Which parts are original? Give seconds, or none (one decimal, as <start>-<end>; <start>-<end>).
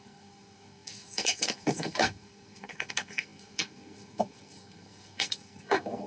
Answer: none